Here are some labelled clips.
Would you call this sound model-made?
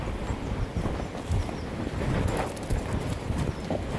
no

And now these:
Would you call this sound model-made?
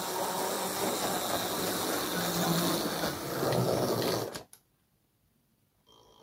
no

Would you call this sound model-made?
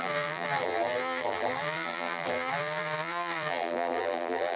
yes